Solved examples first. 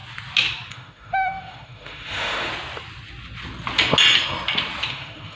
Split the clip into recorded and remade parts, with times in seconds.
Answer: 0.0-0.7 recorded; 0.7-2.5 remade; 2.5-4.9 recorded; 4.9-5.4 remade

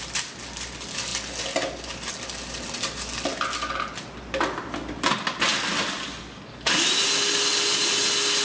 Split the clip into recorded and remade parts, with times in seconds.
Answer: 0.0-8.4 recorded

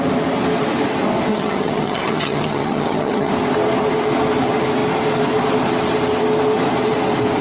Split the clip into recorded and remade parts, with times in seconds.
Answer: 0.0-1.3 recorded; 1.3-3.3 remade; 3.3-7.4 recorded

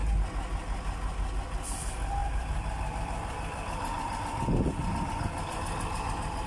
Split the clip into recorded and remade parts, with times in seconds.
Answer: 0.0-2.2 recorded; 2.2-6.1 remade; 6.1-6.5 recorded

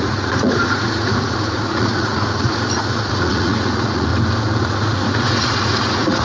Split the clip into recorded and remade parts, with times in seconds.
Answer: 0.0-4.1 remade; 4.1-4.6 recorded; 4.6-6.2 remade

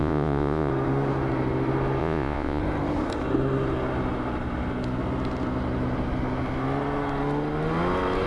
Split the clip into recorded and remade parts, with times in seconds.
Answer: 0.0-0.7 remade; 0.7-2.0 recorded; 2.0-2.6 remade; 2.6-8.3 recorded